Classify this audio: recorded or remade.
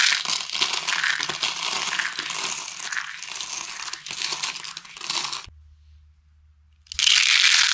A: recorded